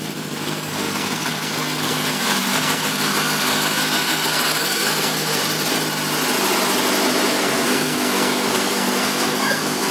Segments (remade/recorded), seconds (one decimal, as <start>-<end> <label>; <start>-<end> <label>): 0.0-5.4 remade; 5.4-7.3 recorded; 7.3-9.9 remade